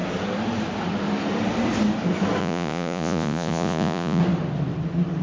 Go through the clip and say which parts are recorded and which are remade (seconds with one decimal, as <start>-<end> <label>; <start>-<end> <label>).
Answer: 0.0-2.4 recorded; 2.4-4.2 remade; 4.2-5.2 recorded